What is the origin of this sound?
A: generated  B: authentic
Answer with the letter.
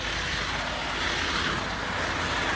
B